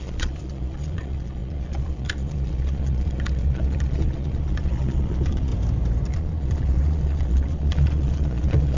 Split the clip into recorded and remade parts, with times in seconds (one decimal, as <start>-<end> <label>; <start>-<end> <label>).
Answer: 0.0-5.5 remade; 5.5-6.1 recorded; 6.1-8.8 remade

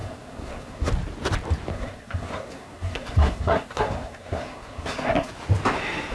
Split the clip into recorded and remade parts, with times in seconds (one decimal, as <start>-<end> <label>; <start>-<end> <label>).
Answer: 0.0-0.9 remade; 0.9-1.7 recorded; 1.7-5.3 remade; 5.3-6.1 recorded

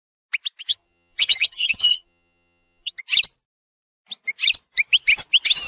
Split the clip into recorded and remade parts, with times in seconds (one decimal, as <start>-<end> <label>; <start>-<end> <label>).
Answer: 0.0-0.7 recorded; 0.7-3.0 remade; 3.0-5.7 recorded

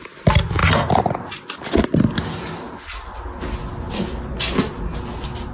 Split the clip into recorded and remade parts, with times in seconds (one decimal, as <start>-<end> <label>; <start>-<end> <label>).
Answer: 0.0-5.5 recorded

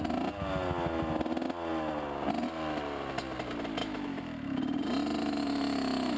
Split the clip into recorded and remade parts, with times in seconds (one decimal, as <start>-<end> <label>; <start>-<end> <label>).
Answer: 0.0-3.8 recorded; 3.8-4.6 remade; 4.6-5.2 recorded; 5.2-6.2 remade

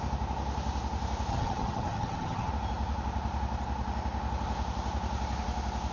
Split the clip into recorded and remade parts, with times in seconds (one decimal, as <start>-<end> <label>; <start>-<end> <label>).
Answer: 0.0-1.3 recorded; 1.3-2.5 remade; 2.5-5.9 recorded